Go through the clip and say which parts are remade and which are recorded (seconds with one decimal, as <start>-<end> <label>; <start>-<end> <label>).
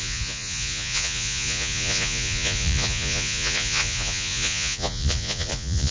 0.0-5.9 remade